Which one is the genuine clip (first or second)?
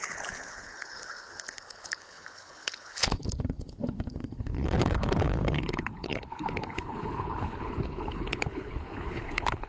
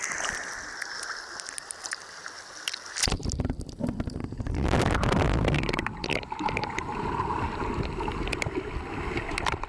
second